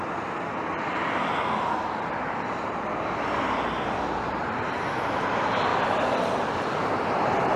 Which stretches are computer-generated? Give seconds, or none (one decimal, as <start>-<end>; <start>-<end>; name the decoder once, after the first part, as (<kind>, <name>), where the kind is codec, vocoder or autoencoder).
5.7-6.9 (vocoder, BigVGAN v2)